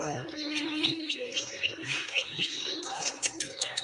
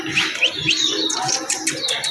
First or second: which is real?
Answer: second